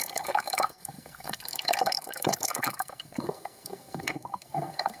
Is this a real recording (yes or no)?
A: no